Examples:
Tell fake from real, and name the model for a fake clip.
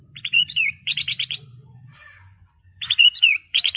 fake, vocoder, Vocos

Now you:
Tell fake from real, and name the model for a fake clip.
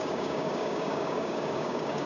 fake, codec, DAC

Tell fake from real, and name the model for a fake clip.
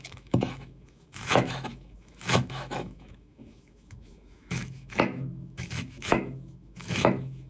fake, autoencoder, DAC-VAE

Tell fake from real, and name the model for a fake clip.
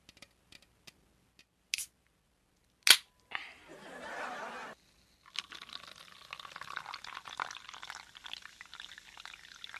real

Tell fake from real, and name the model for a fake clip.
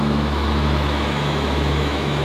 fake, autoencoder, DAC-VAE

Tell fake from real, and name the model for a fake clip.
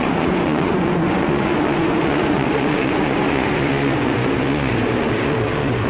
fake, vocoder, Vocos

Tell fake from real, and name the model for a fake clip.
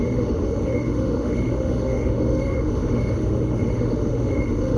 fake, autoencoder, DAC-VAE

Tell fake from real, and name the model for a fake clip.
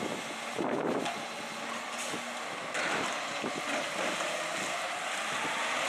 real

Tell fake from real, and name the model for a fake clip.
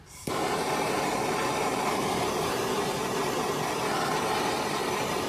fake, vocoder, BigVGAN v2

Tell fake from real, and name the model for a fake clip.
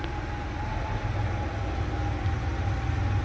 real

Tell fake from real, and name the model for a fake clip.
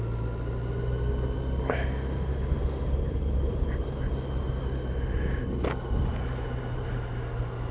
real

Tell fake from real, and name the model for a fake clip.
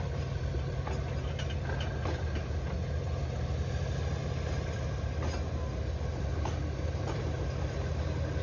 real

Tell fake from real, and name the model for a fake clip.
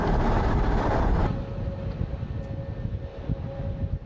real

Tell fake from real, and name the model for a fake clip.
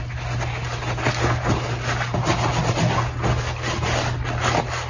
real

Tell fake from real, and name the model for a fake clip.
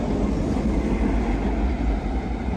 real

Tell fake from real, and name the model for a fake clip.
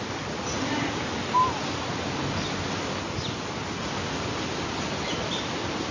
real